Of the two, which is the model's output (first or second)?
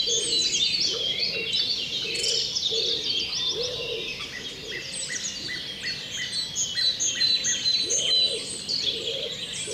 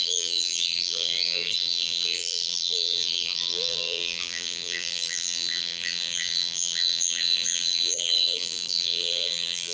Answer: second